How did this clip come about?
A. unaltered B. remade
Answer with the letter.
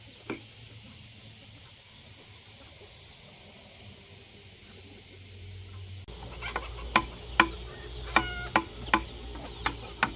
A